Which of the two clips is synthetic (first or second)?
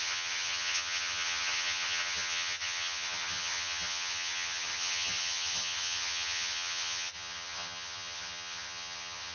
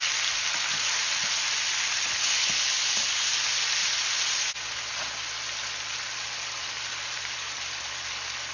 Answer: first